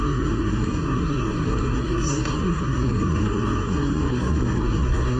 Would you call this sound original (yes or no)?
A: no